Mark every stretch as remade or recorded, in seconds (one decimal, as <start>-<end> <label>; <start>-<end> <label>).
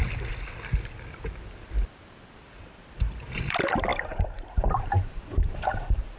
0.0-2.5 recorded; 2.5-6.2 remade